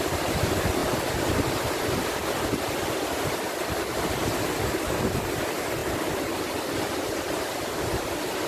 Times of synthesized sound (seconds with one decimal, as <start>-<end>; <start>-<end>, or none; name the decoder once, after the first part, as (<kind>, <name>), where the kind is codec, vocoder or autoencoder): none